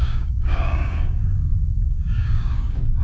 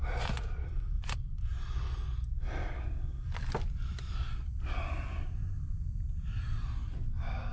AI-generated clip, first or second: first